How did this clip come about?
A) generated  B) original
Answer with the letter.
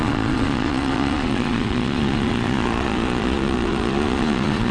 A